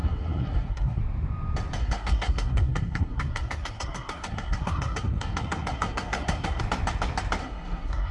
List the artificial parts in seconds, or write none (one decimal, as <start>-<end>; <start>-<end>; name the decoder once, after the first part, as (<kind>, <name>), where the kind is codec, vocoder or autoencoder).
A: 0.0-1.0 (codec, SNAC); 1.8-6.6; 7.4-8.1